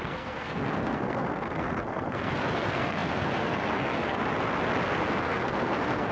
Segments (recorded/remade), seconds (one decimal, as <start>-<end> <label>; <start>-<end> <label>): 0.0-4.2 remade; 4.2-5.2 recorded; 5.2-6.1 remade